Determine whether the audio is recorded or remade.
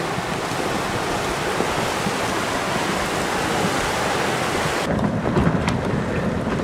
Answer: recorded